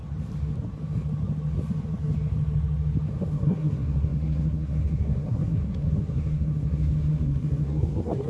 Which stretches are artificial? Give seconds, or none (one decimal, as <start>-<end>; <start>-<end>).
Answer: 3.1-8.3